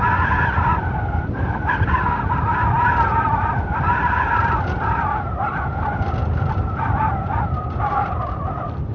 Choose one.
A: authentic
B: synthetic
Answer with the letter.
A